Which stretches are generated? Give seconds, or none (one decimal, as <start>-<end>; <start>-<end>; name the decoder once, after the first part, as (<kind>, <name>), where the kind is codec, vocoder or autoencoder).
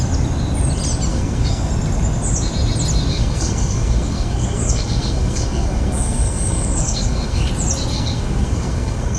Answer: 1.1-1.7 (codec, SNAC); 3.1-7.5; 7.9-9.2